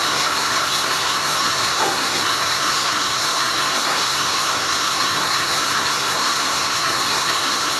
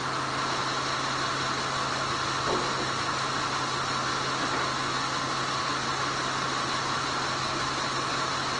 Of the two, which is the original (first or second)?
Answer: second